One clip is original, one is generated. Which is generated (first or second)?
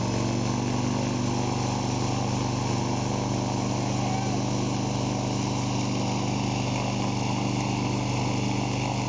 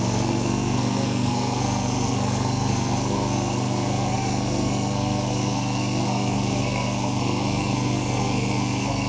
second